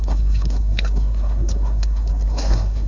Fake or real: fake